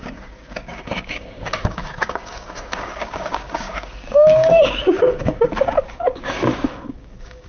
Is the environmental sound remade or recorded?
remade